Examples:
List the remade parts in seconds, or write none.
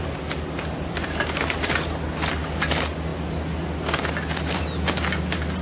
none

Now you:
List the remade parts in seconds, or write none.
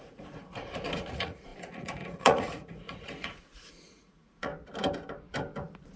0.0-4.5